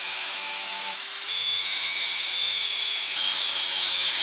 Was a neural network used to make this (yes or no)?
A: yes